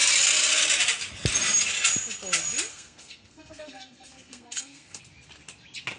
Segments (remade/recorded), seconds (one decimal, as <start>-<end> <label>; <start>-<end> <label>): 0.0-2.7 recorded; 2.7-5.0 remade; 5.0-6.0 recorded